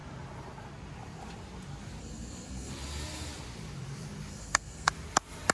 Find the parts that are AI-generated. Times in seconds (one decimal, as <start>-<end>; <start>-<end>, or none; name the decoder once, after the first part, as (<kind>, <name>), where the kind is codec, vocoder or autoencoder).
2.0-2.7 (codec, SNAC); 4.3-4.9